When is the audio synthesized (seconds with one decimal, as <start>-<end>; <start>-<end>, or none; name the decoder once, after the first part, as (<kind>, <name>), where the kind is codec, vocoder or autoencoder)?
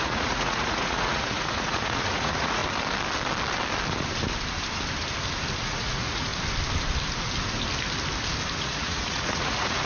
0.0-2.6 (vocoder, Vocos); 5.6-6.3; 8.6-9.9